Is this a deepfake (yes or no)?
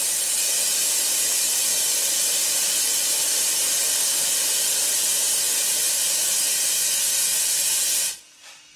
no